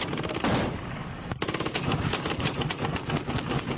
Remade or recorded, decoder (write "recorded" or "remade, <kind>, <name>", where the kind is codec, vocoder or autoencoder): recorded